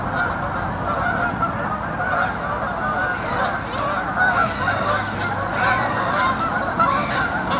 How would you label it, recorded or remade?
recorded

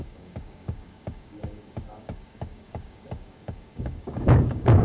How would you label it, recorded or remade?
remade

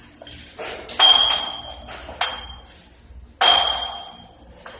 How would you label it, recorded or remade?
recorded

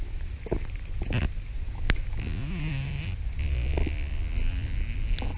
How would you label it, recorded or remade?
recorded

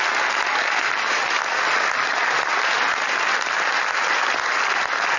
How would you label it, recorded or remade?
recorded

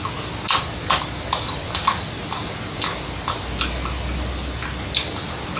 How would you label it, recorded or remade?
recorded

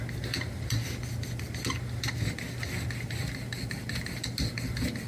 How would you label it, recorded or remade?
recorded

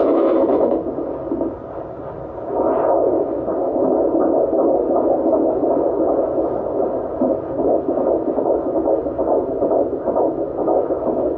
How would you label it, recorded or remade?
recorded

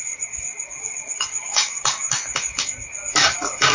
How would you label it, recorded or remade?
remade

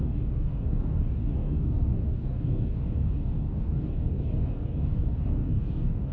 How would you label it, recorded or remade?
remade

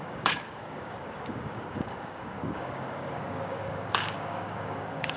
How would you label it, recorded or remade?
remade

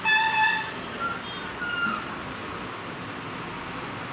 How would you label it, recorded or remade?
recorded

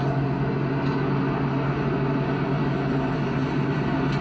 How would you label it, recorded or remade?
recorded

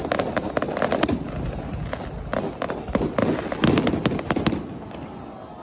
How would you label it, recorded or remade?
recorded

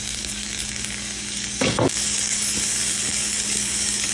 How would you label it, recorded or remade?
remade